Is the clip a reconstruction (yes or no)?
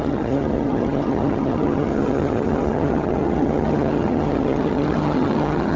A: yes